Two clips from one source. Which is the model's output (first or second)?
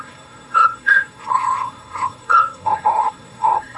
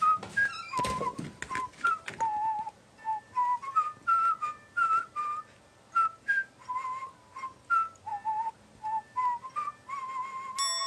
first